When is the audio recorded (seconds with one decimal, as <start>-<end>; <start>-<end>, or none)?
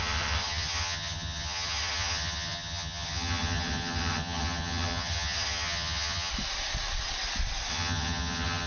6.3-7.7